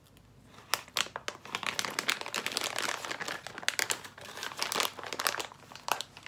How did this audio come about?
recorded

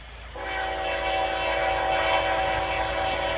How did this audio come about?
recorded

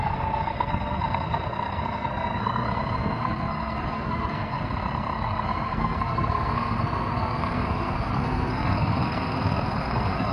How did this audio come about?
remade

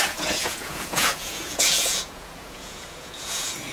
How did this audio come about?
remade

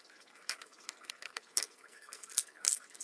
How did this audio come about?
remade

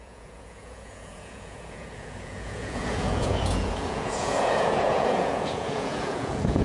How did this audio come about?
remade